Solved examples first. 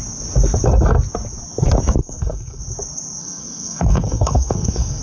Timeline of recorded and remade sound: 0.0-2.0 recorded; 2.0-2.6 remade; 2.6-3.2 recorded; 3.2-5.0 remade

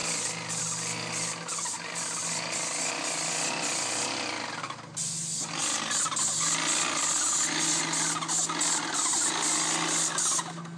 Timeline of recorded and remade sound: 0.0-10.8 recorded

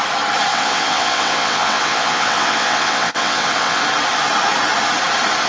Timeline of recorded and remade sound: 0.0-0.5 recorded; 0.5-3.8 remade; 3.8-5.5 recorded